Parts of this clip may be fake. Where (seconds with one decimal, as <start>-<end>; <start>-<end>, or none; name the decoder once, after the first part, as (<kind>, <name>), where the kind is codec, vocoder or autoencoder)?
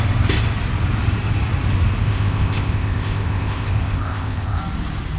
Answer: 2.0-4.6 (codec, ZipCodec)